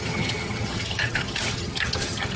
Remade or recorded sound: remade